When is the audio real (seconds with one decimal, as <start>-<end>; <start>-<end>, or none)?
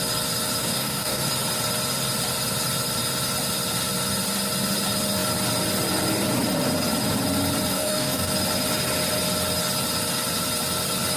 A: 0.0-0.6; 1.3-7.7; 8.3-11.2